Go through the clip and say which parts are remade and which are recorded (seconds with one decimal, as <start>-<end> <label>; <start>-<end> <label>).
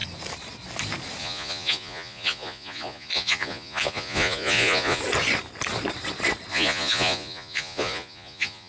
0.0-1.2 recorded; 1.2-5.0 remade; 5.0-6.5 recorded; 6.5-8.7 remade